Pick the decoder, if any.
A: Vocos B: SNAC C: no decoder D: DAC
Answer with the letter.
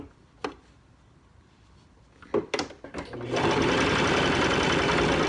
C